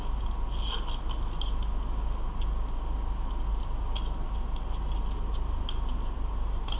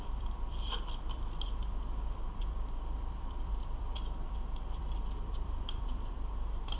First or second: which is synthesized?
second